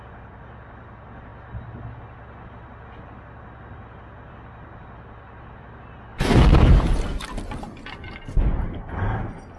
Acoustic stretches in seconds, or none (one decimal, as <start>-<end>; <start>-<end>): 0.0-6.1; 6.9-9.6